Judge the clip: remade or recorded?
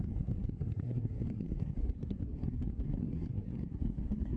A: remade